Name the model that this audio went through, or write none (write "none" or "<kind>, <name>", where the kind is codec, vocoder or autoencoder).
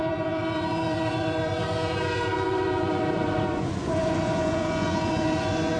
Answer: vocoder, Vocos